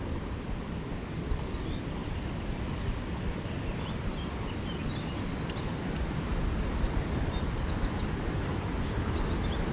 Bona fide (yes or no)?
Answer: yes